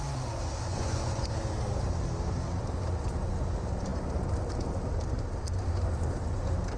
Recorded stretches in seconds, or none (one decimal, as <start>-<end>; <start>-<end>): 0.0-0.7; 1.3-6.8